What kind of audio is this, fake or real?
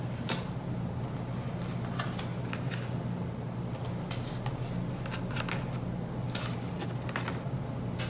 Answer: real